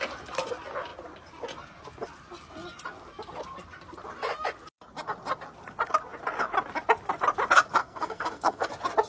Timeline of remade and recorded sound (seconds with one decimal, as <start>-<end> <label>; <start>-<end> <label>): 0.0-7.8 recorded; 7.8-8.7 remade; 8.7-9.1 recorded